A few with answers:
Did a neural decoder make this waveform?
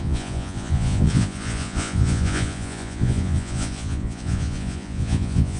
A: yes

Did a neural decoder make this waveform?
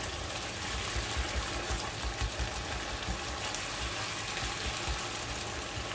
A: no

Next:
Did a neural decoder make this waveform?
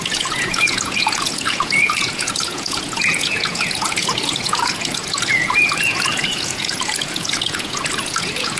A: yes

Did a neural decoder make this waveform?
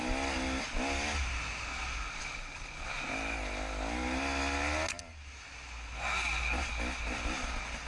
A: no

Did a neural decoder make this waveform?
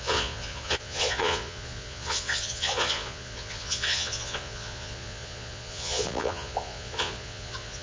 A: yes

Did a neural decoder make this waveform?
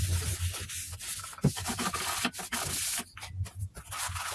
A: no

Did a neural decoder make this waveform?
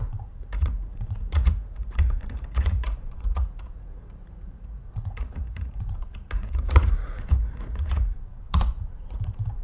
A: yes